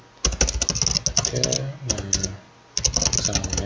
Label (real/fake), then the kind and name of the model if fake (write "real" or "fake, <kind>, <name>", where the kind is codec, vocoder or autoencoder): real